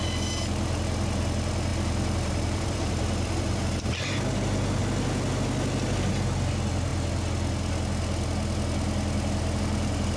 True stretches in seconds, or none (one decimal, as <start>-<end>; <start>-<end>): 0.0-1.7; 3.6-10.2